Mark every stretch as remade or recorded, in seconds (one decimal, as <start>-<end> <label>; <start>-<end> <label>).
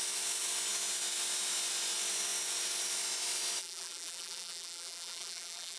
0.0-3.6 recorded; 3.6-5.8 remade